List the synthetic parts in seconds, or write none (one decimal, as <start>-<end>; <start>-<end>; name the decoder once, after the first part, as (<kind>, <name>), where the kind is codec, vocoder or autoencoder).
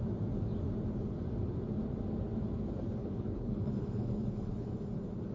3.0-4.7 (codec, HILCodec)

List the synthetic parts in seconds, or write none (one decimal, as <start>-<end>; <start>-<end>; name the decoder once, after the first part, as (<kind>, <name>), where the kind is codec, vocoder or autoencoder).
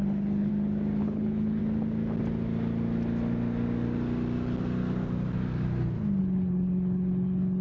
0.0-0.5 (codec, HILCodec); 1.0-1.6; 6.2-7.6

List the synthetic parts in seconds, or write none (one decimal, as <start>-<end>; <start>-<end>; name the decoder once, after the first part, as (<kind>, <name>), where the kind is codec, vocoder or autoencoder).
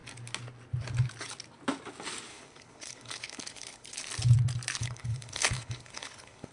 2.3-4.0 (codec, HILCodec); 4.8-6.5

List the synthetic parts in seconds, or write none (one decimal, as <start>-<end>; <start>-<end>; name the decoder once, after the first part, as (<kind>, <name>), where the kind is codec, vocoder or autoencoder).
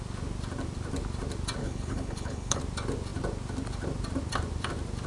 1.6-2.6 (codec, HILCodec)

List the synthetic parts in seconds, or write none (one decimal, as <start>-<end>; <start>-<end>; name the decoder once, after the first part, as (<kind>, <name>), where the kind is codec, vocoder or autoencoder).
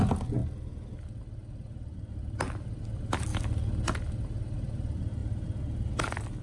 none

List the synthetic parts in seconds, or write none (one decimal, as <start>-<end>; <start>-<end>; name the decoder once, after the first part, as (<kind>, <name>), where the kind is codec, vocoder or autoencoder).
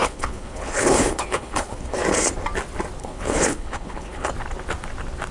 0.0-2.0 (codec, HILCodec); 3.0-4.3